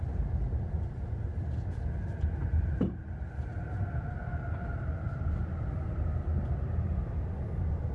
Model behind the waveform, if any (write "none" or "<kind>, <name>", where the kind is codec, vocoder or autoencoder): none